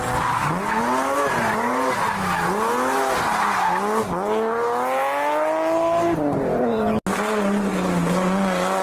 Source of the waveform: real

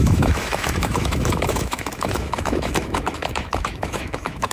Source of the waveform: fake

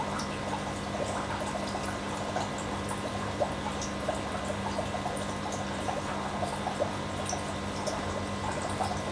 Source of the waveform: real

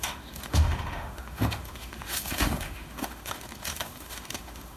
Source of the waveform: fake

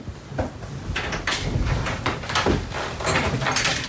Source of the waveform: real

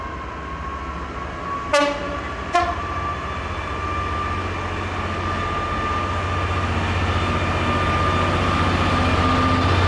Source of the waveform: real